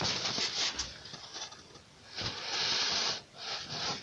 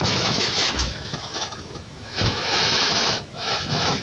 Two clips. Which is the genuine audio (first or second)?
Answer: first